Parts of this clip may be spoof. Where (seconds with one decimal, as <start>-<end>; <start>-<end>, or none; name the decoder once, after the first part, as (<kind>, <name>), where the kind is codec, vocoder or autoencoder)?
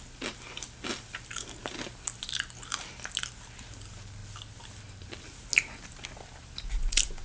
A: none